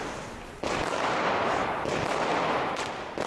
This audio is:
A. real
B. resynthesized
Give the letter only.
A